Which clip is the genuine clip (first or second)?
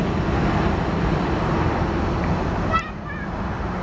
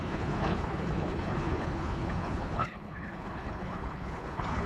first